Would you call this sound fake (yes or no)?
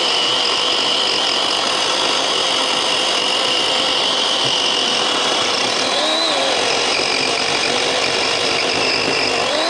no